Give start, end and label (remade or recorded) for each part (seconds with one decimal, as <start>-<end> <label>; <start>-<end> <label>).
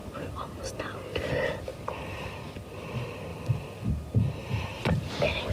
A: 0.0-0.8 remade; 0.8-4.4 recorded; 4.4-5.1 remade; 5.1-5.5 recorded